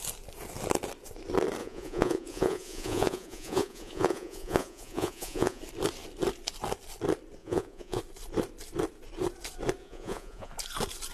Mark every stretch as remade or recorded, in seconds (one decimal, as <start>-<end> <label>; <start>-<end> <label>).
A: 0.0-1.6 recorded; 1.6-5.6 remade; 5.6-7.4 recorded; 7.4-8.0 remade; 8.0-9.8 recorded; 9.8-10.5 remade; 10.5-11.1 recorded